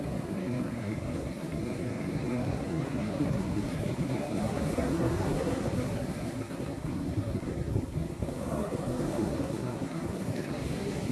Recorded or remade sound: remade